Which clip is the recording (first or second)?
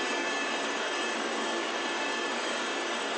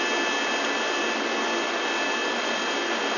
second